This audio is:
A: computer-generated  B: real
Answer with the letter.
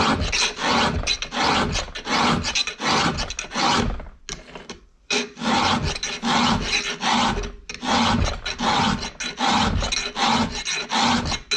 B